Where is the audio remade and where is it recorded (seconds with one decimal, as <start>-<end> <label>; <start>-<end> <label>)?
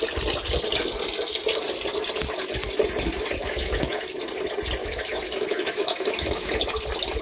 0.0-3.4 recorded; 3.4-4.2 remade; 4.2-4.8 recorded; 4.8-6.6 remade; 6.6-7.2 recorded